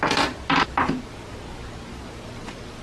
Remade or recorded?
recorded